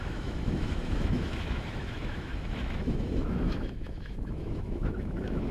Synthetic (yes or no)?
yes